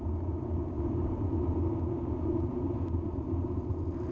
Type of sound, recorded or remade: recorded